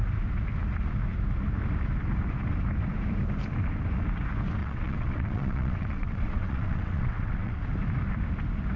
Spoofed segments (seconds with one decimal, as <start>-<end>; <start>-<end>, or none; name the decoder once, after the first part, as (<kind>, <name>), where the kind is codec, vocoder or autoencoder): 4.6-7.6 (vocoder, WaveNeXt)